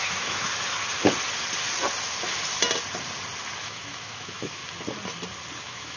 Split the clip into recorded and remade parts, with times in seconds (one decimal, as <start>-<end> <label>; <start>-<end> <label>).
0.0-0.5 remade; 0.5-3.6 recorded; 3.6-4.6 remade; 4.6-5.6 recorded; 5.6-6.0 remade